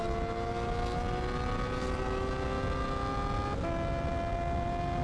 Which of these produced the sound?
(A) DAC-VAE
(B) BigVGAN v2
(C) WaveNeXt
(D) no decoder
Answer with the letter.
D